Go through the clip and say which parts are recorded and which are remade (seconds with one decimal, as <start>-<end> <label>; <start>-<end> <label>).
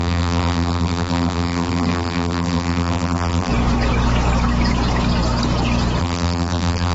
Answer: 0.0-3.5 remade; 3.5-6.0 recorded; 6.0-6.9 remade